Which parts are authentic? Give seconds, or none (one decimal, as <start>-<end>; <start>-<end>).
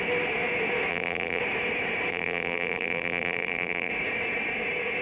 0.0-0.9; 1.4-2.1; 3.9-5.0